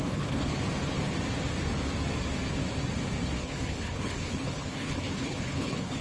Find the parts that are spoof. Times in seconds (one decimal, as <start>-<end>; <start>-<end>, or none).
0.0-0.5; 3.4-6.0